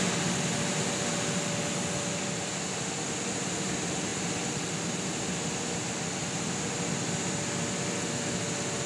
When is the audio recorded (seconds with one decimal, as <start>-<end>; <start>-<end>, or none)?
0.0-8.9